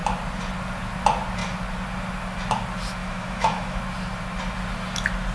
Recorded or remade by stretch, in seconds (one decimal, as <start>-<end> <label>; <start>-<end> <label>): 0.0-3.0 recorded; 3.0-3.8 remade; 3.8-5.3 recorded